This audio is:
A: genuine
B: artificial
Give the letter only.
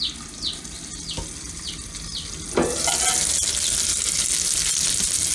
A